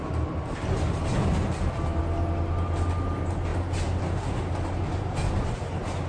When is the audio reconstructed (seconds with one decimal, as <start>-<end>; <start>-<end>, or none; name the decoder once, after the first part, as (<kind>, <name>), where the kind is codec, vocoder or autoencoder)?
none